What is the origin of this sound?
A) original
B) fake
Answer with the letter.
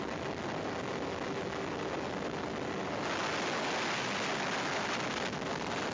A